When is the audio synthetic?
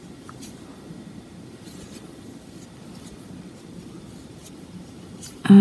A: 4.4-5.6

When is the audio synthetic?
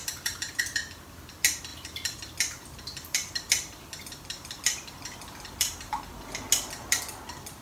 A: 0.0-0.6; 1.7-6.3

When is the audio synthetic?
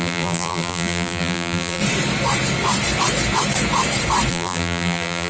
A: 0.0-1.8; 4.3-5.3